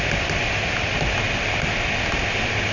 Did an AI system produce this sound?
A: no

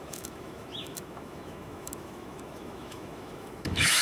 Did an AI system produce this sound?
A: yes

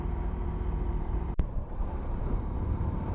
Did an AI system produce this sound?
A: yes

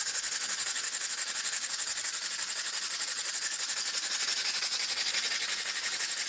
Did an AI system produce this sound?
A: yes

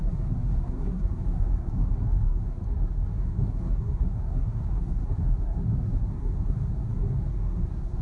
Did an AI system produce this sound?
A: yes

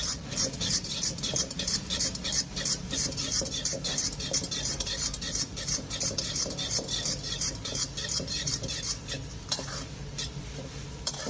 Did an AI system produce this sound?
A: no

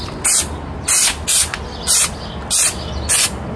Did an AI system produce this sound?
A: no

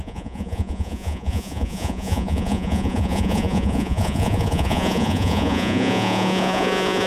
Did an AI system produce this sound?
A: yes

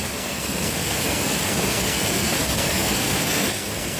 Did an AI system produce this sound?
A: yes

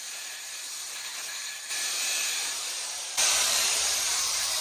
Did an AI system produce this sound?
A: yes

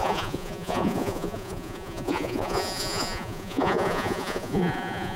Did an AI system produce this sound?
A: yes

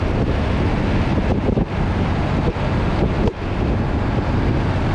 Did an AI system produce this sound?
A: no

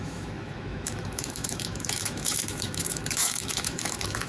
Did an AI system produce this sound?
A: yes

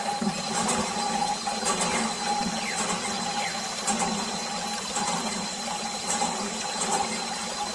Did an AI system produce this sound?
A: no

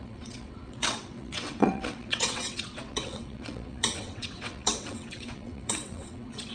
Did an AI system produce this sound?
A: yes